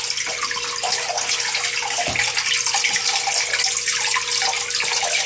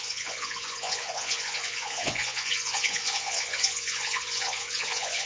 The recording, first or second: first